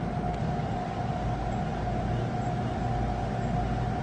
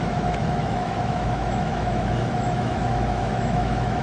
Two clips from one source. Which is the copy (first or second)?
second